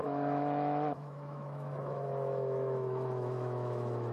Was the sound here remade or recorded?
remade